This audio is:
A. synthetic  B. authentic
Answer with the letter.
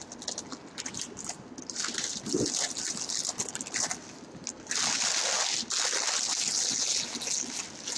B